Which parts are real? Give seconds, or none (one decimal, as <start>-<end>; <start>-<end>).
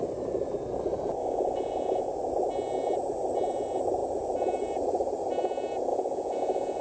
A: 0.0-1.2; 2.1-5.9